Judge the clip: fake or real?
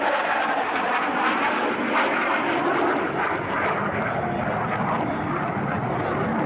real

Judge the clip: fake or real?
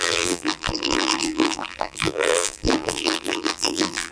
fake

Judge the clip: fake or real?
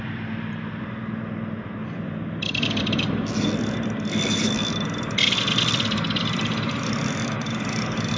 fake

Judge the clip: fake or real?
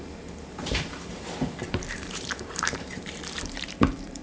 fake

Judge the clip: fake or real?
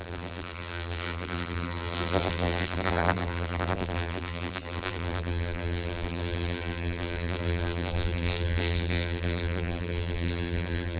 fake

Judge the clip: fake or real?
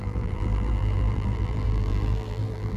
fake